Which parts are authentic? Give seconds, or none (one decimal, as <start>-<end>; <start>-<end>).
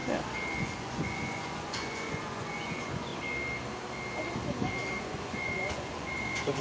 0.0-0.6; 3.1-5.0